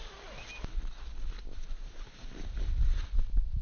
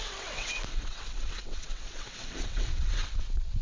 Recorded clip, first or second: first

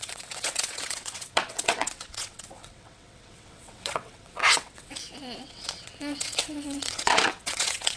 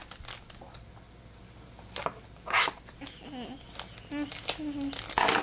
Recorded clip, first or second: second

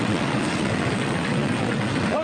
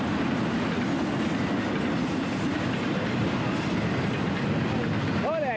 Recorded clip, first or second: second